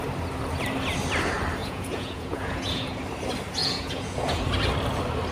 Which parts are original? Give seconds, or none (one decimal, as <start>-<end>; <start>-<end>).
0.0-1.6; 3.0-3.6; 4.4-5.3

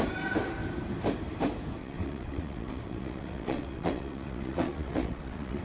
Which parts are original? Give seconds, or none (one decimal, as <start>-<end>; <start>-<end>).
0.0-1.8

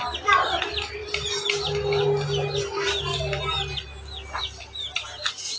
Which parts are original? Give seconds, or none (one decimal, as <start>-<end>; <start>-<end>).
0.0-5.6

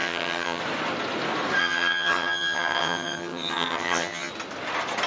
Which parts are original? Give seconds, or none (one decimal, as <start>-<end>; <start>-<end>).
0.6-1.6; 4.3-5.1